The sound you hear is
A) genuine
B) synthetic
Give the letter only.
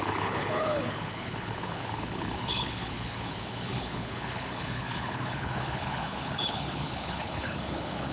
B